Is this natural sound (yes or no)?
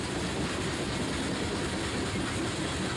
yes